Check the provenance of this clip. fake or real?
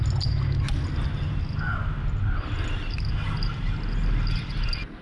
real